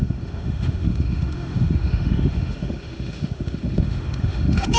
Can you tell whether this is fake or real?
fake